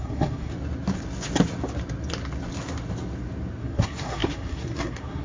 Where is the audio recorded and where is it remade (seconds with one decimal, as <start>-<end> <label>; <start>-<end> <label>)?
0.0-0.5 remade; 0.5-3.6 recorded; 3.6-5.2 remade